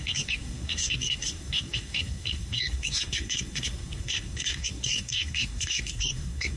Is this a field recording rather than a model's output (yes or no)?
no